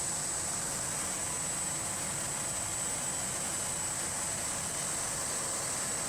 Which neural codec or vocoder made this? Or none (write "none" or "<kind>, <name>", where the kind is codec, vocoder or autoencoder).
none